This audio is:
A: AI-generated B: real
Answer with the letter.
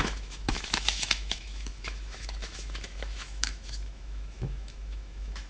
A